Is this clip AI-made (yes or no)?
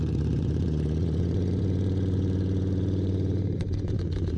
yes